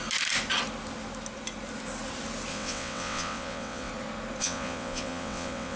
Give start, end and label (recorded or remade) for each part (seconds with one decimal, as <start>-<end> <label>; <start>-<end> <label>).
0.0-2.5 recorded; 2.5-3.9 remade; 3.9-4.4 recorded; 4.4-5.8 remade